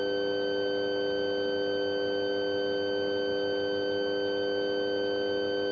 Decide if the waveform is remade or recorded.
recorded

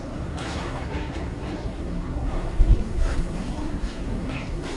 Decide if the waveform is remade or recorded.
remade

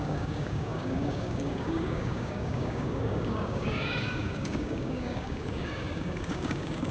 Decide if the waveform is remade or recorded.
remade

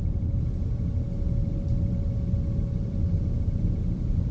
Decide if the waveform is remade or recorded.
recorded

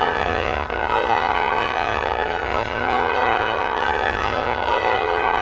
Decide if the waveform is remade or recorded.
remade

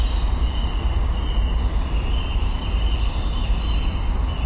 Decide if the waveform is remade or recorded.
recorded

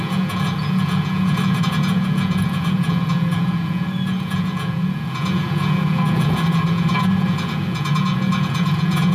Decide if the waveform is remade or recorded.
remade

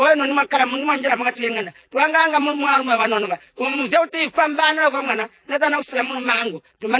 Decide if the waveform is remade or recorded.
remade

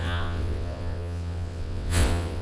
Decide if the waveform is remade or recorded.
remade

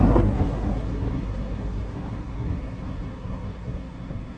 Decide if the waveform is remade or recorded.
remade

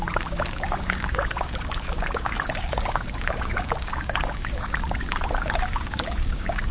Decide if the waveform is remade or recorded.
remade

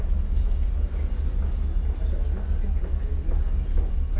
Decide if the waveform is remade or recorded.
recorded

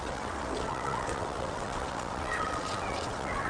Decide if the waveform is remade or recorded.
remade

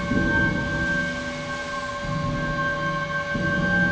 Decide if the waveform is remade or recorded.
recorded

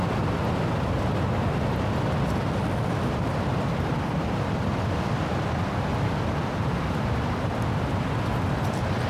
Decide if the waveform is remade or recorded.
recorded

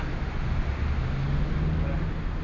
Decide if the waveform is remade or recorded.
recorded